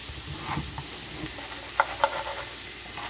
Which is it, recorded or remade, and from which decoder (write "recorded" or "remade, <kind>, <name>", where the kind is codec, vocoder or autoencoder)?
recorded